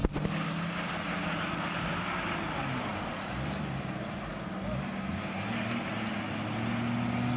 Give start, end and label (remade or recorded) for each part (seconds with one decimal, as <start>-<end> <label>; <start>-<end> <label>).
0.0-2.9 recorded; 2.9-4.3 remade; 4.3-7.4 recorded